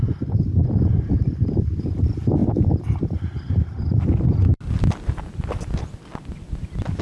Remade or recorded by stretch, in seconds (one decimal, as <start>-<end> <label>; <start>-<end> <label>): 0.0-7.0 recorded